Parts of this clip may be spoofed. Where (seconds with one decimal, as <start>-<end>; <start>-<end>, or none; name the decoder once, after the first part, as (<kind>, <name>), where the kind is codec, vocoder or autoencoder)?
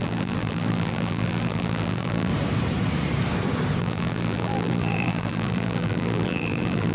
0.0-2.3 (vocoder, BigVGAN v2); 3.8-6.9